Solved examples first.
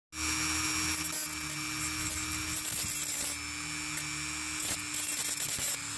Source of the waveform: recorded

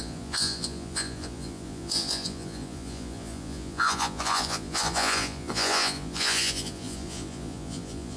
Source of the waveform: remade